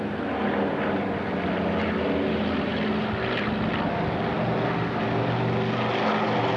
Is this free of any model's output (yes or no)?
yes